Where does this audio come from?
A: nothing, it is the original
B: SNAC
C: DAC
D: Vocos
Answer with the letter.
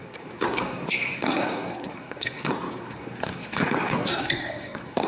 B